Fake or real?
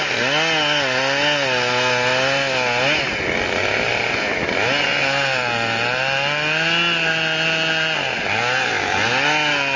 real